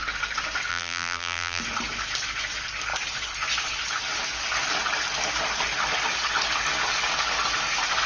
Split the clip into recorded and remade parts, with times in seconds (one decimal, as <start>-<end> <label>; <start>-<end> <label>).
0.0-0.7 recorded; 0.7-1.6 remade; 1.6-8.1 recorded